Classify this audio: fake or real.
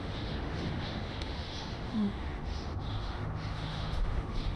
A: fake